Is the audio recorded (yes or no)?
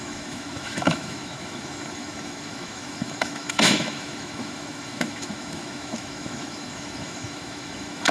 no